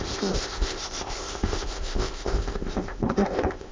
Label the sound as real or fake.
fake